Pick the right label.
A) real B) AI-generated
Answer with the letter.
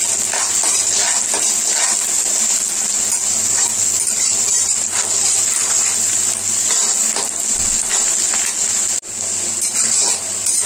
A